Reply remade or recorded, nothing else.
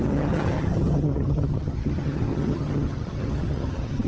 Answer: remade